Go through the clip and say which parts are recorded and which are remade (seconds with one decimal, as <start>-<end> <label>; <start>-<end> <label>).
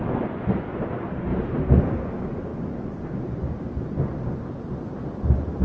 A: 0.0-1.3 recorded; 1.3-2.0 remade; 2.0-5.6 recorded